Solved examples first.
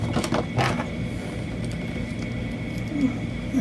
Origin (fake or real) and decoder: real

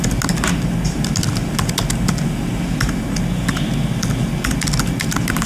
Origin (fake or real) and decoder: real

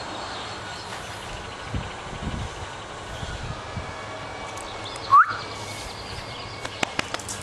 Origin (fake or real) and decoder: real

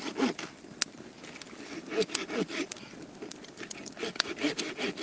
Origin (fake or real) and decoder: real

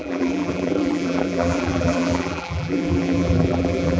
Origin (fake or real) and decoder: fake, vocoder, BigVGAN v2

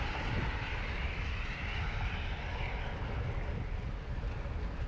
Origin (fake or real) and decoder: real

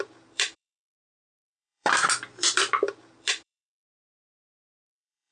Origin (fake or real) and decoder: fake, vocoder, BigVGAN v2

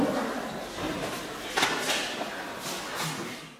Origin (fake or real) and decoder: real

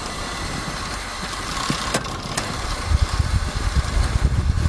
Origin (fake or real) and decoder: fake, vocoder, BigVGAN v2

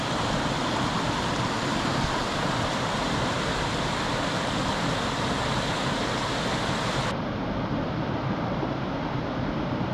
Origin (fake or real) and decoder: real